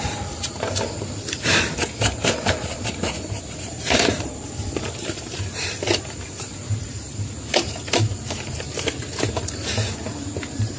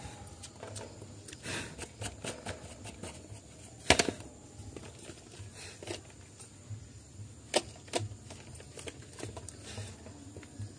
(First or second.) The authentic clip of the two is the second